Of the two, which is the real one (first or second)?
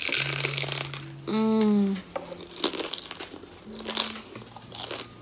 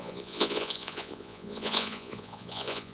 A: first